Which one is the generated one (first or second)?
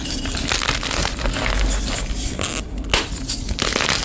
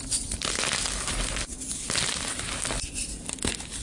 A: second